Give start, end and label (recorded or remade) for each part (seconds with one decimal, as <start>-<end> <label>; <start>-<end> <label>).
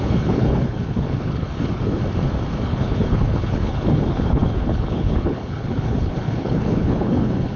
0.0-2.0 remade; 2.0-2.6 recorded; 2.6-7.6 remade